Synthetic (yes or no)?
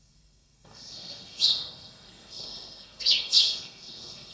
yes